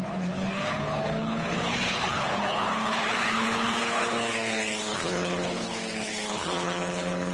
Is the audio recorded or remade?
remade